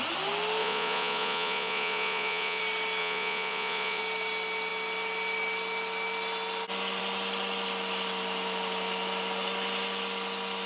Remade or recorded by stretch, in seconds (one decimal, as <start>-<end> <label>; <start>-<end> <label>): 0.0-0.6 recorded; 0.6-2.6 remade; 2.6-3.0 recorded; 3.0-4.0 remade; 4.0-10.7 recorded